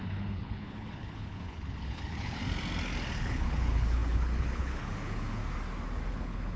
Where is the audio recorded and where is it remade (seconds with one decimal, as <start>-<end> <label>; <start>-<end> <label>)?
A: 0.0-2.4 remade; 2.4-3.2 recorded; 3.2-5.4 remade; 5.4-6.1 recorded; 6.1-6.6 remade